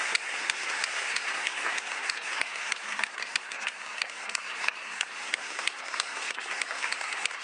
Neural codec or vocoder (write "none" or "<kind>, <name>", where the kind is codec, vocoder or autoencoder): codec, SNAC